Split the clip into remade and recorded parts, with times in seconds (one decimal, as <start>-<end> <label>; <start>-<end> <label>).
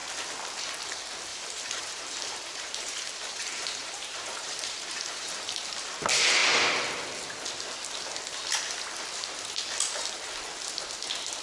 0.0-1.3 recorded; 1.3-5.5 remade; 5.5-11.4 recorded